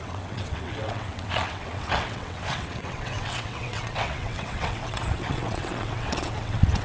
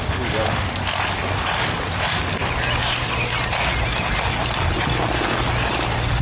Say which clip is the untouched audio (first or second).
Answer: second